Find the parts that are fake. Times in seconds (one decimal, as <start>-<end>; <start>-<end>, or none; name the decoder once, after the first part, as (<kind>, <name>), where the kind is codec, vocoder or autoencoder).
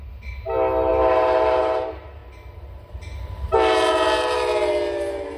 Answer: none